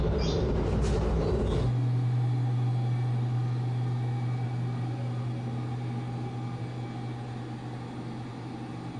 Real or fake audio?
real